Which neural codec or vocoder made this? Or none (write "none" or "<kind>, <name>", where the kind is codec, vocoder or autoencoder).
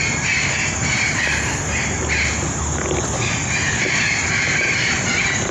none